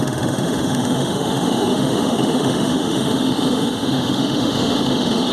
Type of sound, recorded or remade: remade